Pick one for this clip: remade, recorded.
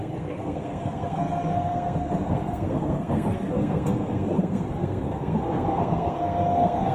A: remade